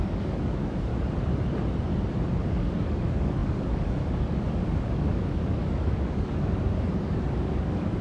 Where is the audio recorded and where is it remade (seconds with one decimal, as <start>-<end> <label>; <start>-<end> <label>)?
0.0-0.9 remade; 0.9-2.5 recorded; 2.5-8.0 remade